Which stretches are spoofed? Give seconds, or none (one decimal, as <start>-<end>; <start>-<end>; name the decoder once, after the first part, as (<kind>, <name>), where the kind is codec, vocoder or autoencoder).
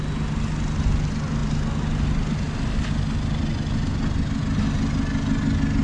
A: none